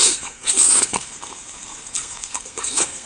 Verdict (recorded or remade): remade